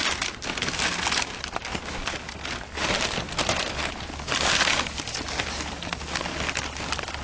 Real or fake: real